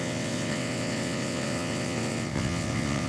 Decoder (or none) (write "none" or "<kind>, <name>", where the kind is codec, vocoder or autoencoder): vocoder, WaveNeXt